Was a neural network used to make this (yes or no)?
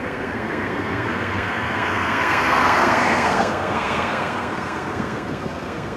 yes